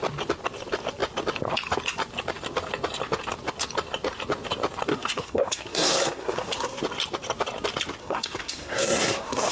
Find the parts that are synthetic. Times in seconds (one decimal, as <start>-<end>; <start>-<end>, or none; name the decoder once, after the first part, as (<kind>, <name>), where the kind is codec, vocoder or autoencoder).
4.9-6.8 (codec, SNAC); 8.0-9.5